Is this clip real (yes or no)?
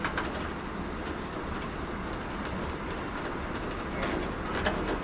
yes